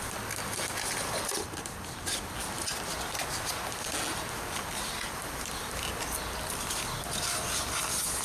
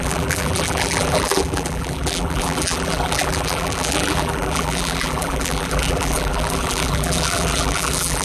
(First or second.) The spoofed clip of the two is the second